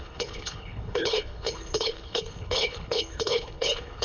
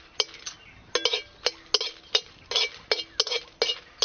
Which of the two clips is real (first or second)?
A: second